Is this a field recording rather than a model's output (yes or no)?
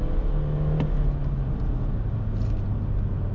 yes